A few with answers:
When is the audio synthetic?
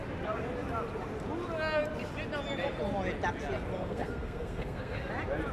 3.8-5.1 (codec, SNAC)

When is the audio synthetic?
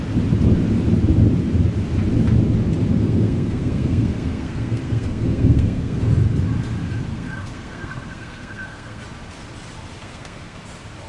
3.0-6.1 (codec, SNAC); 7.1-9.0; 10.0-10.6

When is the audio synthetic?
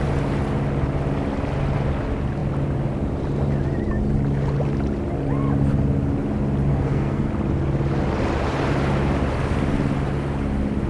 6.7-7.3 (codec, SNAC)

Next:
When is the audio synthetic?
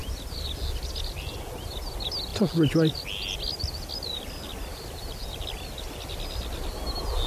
none